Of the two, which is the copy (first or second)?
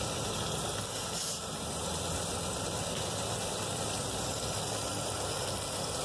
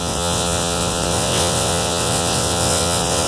second